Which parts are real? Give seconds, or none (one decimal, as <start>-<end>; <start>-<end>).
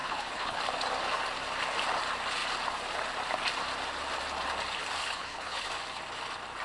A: 0.6-5.0; 5.7-6.6